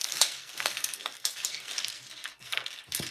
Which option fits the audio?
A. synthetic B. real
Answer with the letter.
A